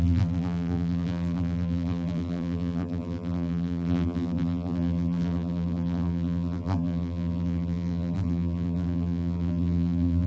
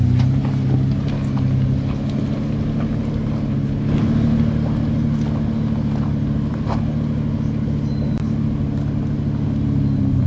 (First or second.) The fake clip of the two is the first